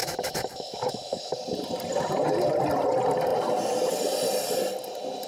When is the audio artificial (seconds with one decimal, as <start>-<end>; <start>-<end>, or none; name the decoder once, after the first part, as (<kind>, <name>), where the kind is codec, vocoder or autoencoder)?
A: 0.0-1.4 (autoencoder, DAC-VAE)